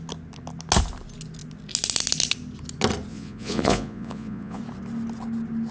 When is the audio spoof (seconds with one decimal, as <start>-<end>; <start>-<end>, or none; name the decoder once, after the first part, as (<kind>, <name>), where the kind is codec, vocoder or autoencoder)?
3.1-4.6 (vocoder, Vocos)